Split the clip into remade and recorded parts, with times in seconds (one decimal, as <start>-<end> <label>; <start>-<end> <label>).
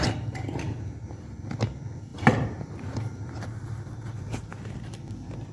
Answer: 0.0-2.1 recorded; 2.1-5.5 remade